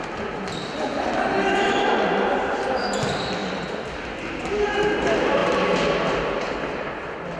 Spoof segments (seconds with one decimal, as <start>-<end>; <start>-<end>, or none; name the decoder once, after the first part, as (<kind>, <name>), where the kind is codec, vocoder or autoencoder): none